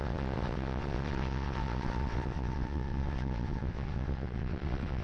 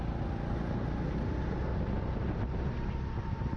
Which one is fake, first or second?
first